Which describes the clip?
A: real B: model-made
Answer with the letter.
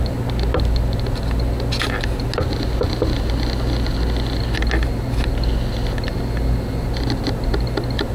A